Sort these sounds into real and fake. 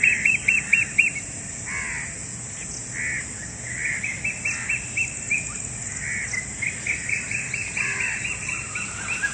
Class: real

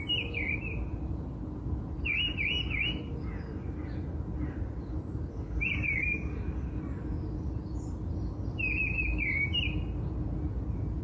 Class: real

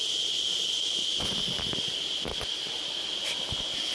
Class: real